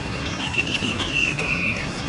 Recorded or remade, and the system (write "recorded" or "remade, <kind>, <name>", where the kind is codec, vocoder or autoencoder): remade, codec, SNAC